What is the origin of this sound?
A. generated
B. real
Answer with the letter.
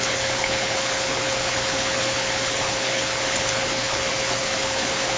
A